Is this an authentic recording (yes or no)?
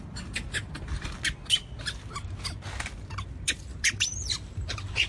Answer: yes